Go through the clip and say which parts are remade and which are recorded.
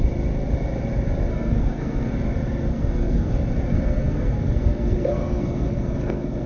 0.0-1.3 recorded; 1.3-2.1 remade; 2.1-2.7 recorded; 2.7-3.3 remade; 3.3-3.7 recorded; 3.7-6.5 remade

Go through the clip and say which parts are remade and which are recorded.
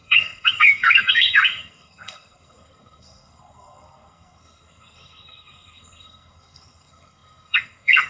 0.0-8.1 remade